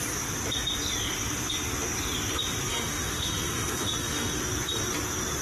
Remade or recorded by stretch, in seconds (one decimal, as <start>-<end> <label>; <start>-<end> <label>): 0.0-2.7 recorded; 2.7-4.4 remade; 4.4-5.4 recorded